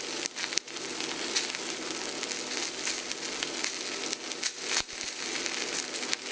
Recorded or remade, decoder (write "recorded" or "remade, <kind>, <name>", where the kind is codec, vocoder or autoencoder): recorded